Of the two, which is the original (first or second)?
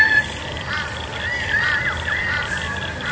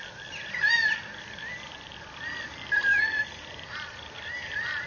first